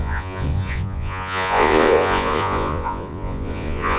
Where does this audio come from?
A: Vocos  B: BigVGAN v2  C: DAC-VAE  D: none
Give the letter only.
A